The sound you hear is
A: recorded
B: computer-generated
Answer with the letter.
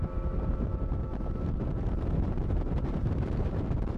B